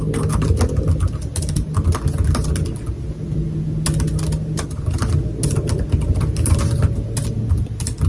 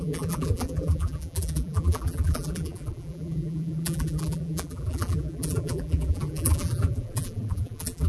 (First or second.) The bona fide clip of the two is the first